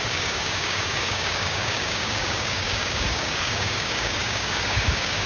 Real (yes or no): no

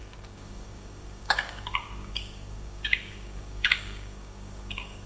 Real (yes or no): no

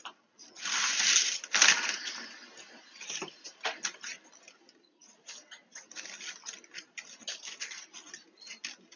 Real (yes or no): yes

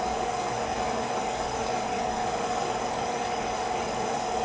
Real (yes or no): no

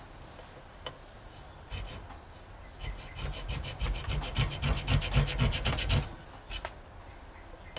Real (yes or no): yes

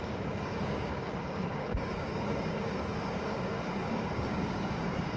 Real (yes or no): no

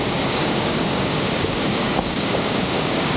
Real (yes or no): no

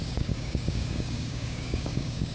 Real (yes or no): no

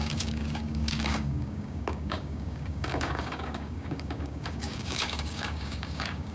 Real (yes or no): no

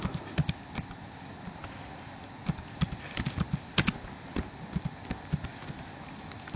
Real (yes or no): yes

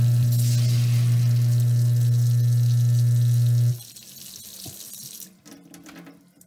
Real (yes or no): yes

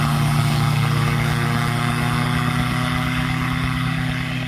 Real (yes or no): no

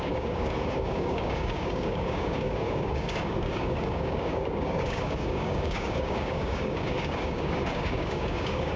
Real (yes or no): no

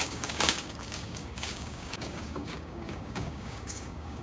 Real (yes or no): no